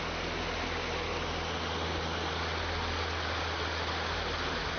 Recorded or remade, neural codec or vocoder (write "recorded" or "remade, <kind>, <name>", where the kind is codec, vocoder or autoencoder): recorded